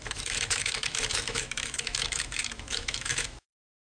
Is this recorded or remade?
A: remade